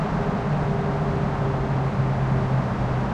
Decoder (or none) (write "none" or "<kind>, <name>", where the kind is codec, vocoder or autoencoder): none